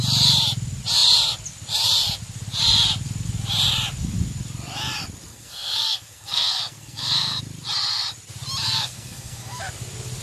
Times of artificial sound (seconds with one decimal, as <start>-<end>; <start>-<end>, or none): 5.3-7.4; 8.6-9.6